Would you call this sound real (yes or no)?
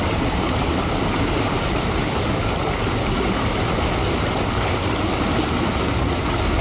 yes